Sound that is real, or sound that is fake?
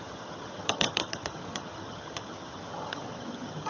fake